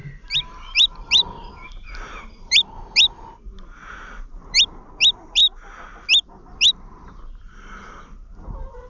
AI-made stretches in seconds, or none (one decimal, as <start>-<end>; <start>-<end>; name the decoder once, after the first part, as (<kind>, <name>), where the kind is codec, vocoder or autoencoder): 0.0-3.2 (vocoder, BigVGAN v2)